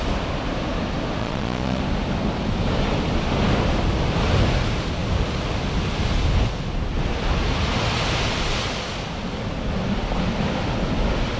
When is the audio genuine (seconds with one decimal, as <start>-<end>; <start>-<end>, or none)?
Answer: 0.0-1.2; 1.8-11.4